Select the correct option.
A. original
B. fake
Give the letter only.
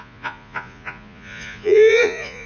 B